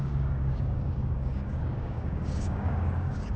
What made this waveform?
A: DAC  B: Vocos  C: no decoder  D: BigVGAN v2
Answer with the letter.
A